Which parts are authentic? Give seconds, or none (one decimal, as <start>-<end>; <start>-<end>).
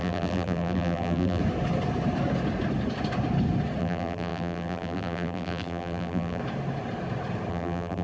1.4-3.8; 6.4-7.5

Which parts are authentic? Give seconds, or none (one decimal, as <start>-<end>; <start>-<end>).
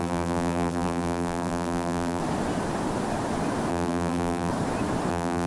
2.2-3.7; 4.5-5.1